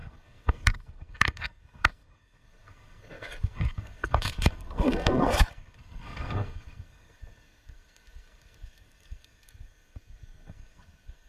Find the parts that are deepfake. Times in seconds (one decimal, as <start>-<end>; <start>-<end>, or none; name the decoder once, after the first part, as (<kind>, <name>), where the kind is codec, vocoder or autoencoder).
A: 0.0-11.3 (codec, SNAC)